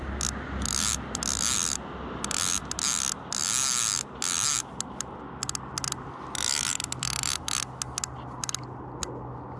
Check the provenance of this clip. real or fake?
real